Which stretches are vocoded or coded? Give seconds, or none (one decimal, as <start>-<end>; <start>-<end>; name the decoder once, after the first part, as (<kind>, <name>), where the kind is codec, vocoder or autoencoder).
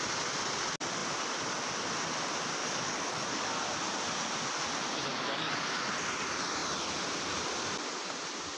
2.6-3.5 (codec, DAC); 5.1-5.9